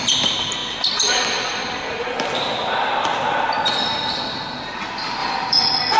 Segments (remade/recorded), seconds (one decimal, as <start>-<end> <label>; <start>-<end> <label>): 0.0-0.6 recorded; 0.6-4.2 remade; 4.2-5.2 recorded; 5.2-6.0 remade